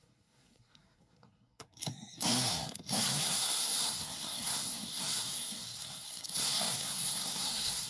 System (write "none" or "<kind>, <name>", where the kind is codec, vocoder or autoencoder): codec, SNAC